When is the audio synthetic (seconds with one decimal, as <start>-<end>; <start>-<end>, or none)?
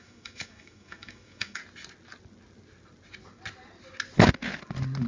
0.0-1.6